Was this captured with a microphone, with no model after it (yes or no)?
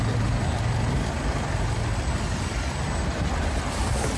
yes